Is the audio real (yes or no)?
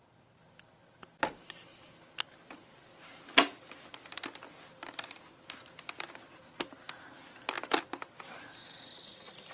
yes